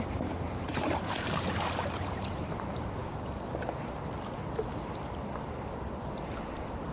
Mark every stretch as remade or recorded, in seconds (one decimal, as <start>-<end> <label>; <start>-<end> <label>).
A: 0.0-3.0 remade; 3.0-5.0 recorded; 5.0-6.9 remade